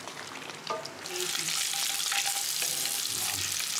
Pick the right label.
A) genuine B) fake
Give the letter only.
B